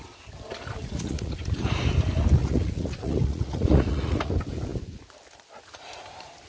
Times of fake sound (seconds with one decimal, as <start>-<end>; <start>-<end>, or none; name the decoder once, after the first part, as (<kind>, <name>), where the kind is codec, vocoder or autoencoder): 0.8-1.7 (vocoder, Vocos); 2.4-4.3